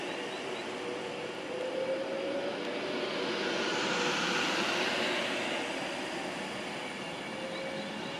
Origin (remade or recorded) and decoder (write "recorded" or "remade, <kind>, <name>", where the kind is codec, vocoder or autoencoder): recorded